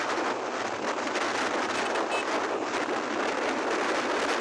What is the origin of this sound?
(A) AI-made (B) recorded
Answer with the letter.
B